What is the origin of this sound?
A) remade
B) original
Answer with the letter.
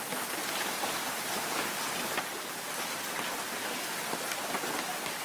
B